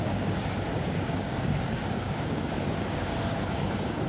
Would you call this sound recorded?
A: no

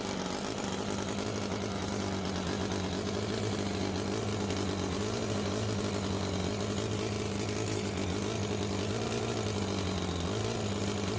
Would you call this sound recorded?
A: yes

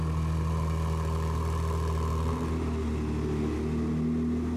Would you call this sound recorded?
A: yes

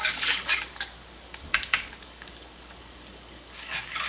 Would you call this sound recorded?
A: no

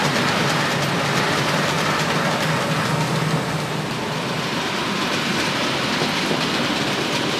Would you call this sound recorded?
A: yes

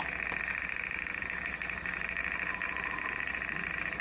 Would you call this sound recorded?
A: yes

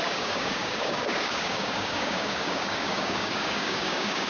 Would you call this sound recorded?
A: no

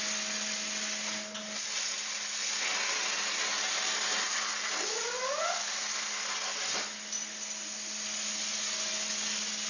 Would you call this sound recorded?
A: yes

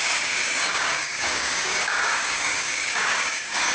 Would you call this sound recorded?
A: no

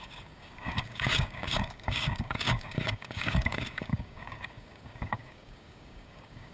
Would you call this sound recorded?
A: no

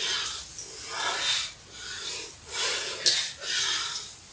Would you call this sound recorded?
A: yes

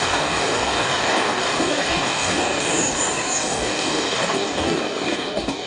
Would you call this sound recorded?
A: no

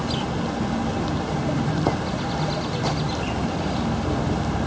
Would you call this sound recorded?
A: yes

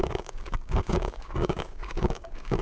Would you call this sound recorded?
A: no